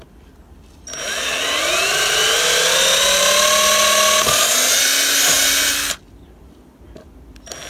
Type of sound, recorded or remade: recorded